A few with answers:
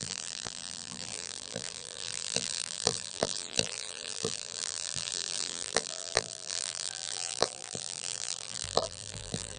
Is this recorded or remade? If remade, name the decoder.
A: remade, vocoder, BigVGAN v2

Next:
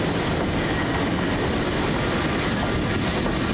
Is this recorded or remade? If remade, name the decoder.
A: recorded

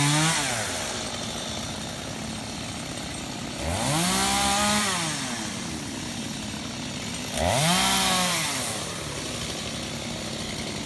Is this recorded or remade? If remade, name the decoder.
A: recorded